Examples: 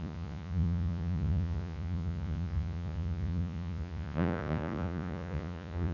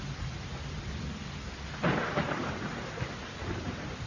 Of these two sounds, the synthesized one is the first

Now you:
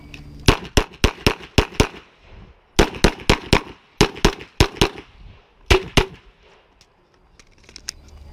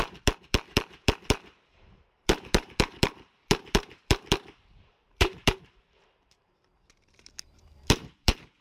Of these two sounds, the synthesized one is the second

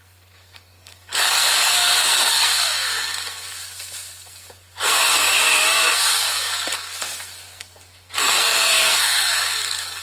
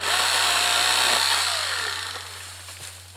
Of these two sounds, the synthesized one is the first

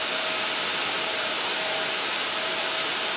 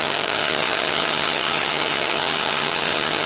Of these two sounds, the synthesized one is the second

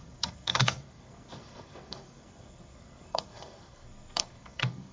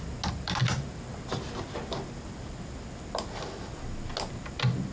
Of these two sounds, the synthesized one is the first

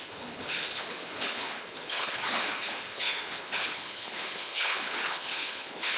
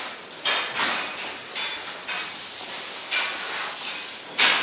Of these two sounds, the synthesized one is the first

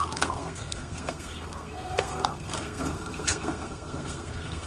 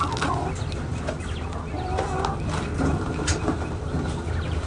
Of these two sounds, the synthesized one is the first